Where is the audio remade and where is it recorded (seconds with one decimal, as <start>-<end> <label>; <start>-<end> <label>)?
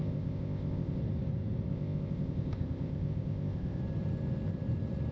0.0-1.0 remade; 1.0-1.7 recorded; 1.7-3.8 remade; 3.8-5.1 recorded